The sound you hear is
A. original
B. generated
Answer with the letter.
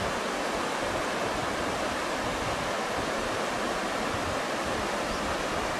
A